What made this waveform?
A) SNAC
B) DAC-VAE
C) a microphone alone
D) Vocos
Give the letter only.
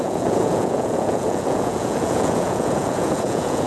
D